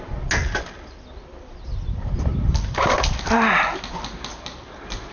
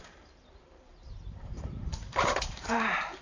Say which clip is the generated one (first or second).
second